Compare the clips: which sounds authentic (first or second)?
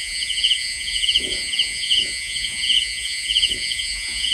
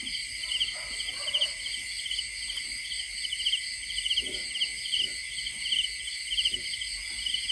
second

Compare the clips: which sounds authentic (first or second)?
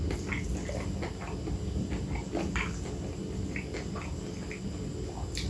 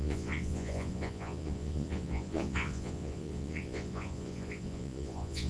first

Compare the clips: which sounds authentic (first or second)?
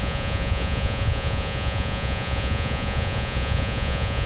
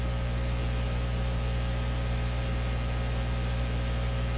second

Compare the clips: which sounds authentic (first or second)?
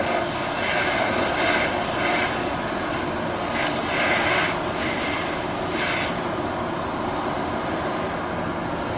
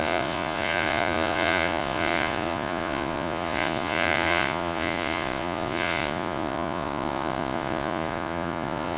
first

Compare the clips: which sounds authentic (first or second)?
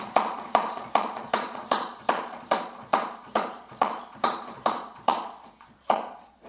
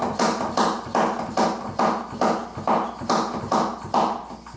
second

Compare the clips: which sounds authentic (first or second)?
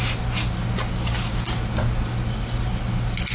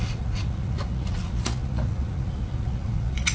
first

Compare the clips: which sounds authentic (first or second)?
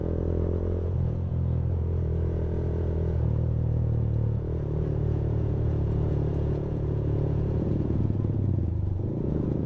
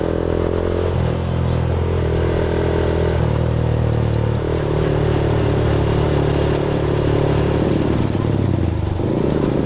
second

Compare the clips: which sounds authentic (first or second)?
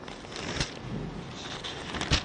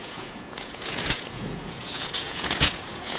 first